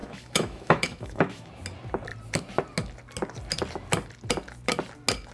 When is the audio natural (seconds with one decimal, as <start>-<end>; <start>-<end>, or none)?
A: 1.5-5.3